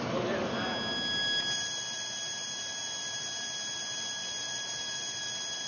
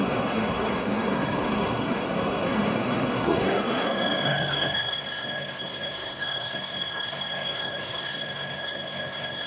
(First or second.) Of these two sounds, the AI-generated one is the second